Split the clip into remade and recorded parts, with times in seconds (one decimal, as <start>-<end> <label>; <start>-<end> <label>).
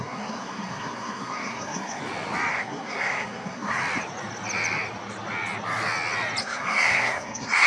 0.0-2.0 remade; 2.0-2.5 recorded; 2.5-3.8 remade; 3.8-6.4 recorded; 6.4-7.7 remade